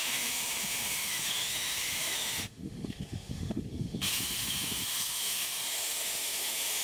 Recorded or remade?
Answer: remade